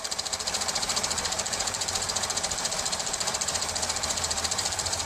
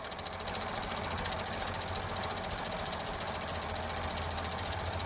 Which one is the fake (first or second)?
first